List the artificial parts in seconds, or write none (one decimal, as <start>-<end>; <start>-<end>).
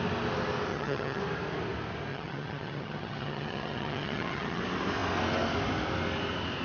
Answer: 0.7-1.2; 2.1-4.6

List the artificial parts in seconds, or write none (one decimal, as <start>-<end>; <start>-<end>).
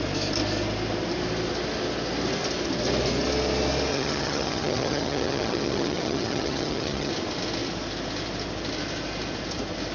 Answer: 3.9-7.1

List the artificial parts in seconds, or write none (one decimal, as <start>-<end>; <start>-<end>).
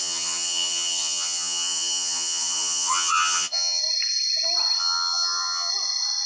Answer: 0.0-3.8; 4.8-5.7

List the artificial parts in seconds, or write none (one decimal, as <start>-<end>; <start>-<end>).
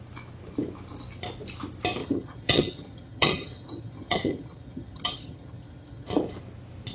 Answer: 2.0-6.1